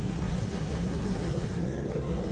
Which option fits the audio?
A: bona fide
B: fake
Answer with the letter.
B